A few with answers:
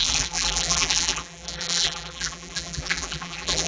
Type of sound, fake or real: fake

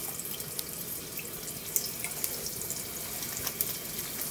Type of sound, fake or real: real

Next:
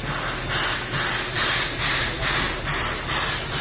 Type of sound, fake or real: real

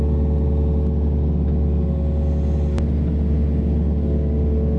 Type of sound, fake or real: real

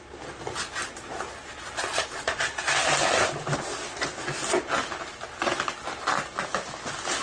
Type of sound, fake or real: real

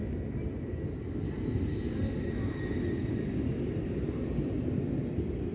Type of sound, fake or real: real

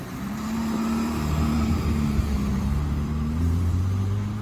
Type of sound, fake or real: fake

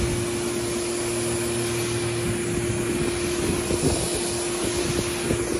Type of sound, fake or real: real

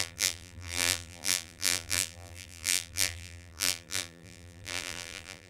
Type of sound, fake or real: fake